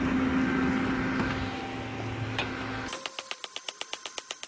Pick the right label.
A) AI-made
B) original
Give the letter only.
B